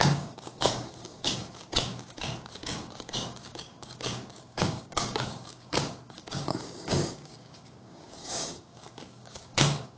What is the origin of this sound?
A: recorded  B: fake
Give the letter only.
B